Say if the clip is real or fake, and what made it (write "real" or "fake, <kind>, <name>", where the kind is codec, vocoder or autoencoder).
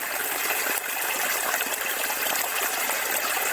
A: real